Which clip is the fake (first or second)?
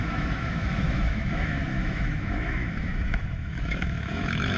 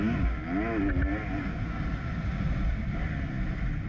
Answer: first